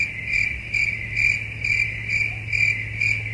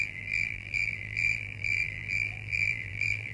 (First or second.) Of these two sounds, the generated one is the second